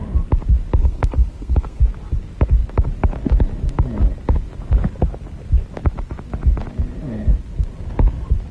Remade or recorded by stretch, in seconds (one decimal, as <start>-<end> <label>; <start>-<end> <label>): 0.0-0.8 recorded; 0.8-1.8 remade; 1.8-8.5 recorded